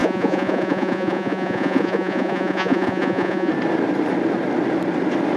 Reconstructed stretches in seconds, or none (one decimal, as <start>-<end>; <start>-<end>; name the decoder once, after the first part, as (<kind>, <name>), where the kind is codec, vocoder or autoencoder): 0.0-3.5 (vocoder, Vocos)